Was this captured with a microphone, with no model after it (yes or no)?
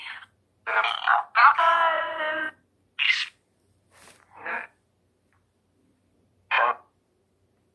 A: yes